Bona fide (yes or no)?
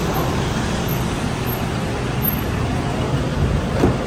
yes